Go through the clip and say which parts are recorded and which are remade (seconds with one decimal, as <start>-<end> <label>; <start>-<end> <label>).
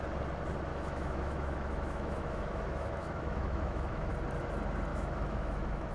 0.0-0.7 recorded; 0.7-4.1 remade; 4.1-4.9 recorded; 4.9-5.9 remade